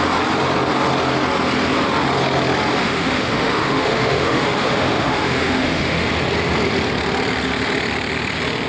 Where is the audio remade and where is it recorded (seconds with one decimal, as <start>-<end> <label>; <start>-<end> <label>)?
0.0-2.8 recorded; 2.8-6.1 remade; 6.1-8.7 recorded